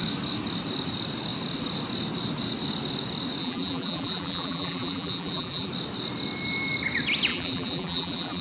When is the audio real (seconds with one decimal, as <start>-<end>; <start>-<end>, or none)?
0.0-3.4; 5.7-7.3